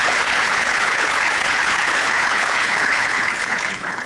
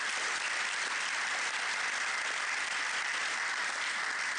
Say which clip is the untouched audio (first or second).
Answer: second